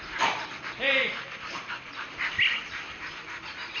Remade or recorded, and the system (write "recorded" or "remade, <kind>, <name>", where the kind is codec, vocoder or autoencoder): recorded